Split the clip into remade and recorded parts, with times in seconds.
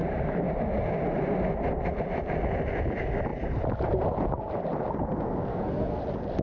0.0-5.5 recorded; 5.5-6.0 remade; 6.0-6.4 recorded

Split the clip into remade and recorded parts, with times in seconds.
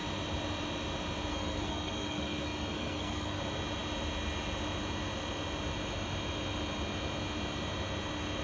0.0-1.3 recorded; 1.3-3.4 remade; 3.4-8.4 recorded